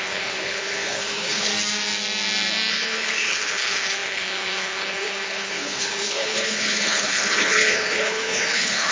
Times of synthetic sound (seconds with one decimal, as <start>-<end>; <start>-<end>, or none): 0.0-1.5; 2.7-8.9